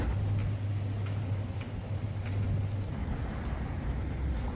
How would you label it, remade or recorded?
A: recorded